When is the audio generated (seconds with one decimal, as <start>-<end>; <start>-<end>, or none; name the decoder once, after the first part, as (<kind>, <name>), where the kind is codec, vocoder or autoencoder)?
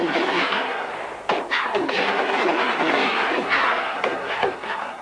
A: 0.0-0.9 (codec, SNAC); 1.5-5.0